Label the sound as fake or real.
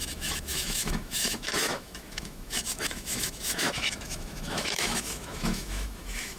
fake